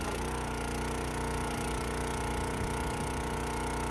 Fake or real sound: real